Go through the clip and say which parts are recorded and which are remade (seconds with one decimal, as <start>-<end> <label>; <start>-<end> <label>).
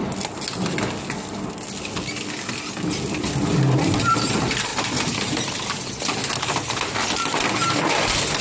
0.0-4.7 recorded; 4.7-6.3 remade; 6.3-8.4 recorded